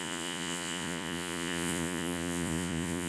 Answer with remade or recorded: remade